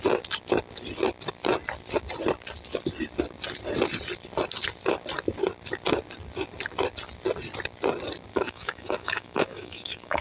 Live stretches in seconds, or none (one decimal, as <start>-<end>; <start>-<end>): 0.0-8.3